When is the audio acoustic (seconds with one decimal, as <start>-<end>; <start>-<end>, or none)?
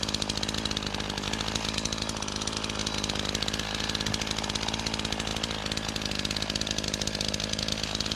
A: 0.0-8.2